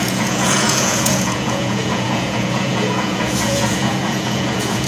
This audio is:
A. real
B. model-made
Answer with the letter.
B